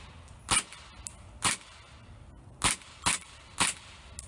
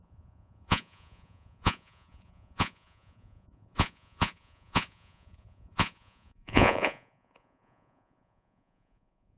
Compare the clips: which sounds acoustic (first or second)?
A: first